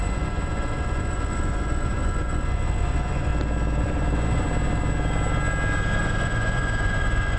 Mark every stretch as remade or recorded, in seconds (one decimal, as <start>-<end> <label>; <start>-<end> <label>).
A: 0.0-3.3 remade; 3.3-3.8 recorded; 3.8-4.5 remade; 4.5-6.0 recorded; 6.0-7.4 remade